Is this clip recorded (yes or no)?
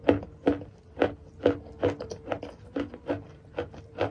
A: yes